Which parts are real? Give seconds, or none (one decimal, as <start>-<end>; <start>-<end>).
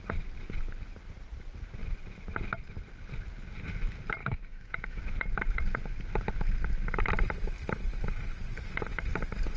0.0-4.2; 5.0-9.6